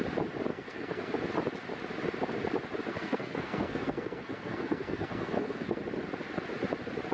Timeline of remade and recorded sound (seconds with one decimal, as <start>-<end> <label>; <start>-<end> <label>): 0.0-0.5 recorded; 0.5-1.1 remade; 1.1-2.9 recorded; 2.9-5.8 remade; 5.8-7.1 recorded